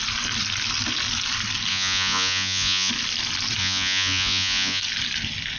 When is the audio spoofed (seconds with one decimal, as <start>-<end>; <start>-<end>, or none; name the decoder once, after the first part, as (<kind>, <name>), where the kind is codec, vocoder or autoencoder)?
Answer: 1.7-2.9 (vocoder, Vocos); 3.6-4.8